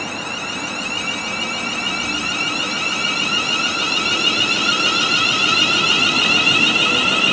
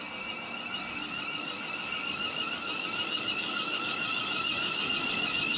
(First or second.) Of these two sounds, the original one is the first